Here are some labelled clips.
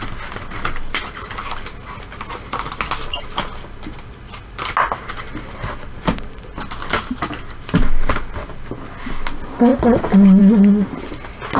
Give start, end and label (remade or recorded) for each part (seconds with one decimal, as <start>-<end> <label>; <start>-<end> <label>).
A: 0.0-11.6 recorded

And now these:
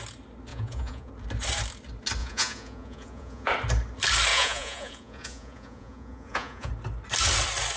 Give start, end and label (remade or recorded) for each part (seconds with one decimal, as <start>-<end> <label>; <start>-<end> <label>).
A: 0.0-0.5 recorded; 0.5-1.1 remade; 1.1-2.2 recorded; 2.2-3.5 remade; 3.5-4.3 recorded; 4.3-6.7 remade; 6.7-7.8 recorded

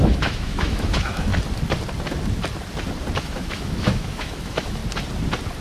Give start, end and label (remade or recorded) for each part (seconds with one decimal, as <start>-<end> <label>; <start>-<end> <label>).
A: 0.0-1.3 remade; 1.3-3.2 recorded; 3.2-4.8 remade; 4.8-5.6 recorded

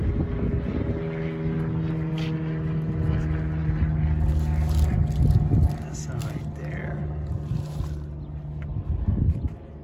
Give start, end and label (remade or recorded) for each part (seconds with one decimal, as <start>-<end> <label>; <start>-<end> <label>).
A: 0.0-9.8 recorded

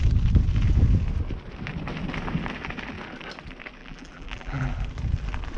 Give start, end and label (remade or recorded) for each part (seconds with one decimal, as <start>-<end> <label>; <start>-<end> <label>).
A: 0.0-3.8 recorded; 3.8-4.7 remade; 4.7-5.6 recorded

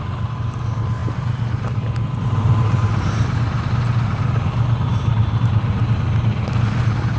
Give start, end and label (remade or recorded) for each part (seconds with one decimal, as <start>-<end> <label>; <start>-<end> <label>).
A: 0.0-1.0 recorded; 1.0-3.4 remade; 3.4-4.9 recorded; 4.9-5.8 remade; 5.8-7.2 recorded

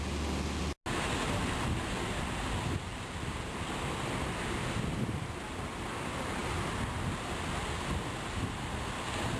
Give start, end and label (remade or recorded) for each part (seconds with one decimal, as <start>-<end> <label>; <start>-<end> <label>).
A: 0.0-2.9 recorded; 2.9-3.5 remade; 3.5-9.4 recorded

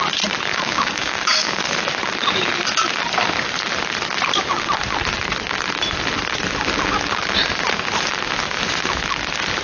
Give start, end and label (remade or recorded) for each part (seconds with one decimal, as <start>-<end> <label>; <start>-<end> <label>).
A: 0.0-0.5 recorded; 0.5-1.6 remade; 1.6-9.6 recorded